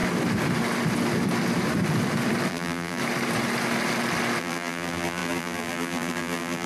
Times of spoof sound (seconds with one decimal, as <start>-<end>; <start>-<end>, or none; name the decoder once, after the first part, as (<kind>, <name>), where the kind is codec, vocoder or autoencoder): 2.5-3.0 (vocoder, BigVGAN v2); 4.4-6.7